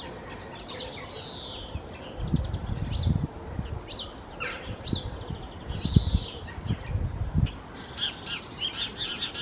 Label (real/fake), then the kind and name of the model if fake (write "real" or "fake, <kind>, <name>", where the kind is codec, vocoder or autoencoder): real